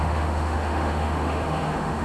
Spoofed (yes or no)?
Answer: yes